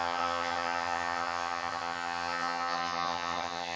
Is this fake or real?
fake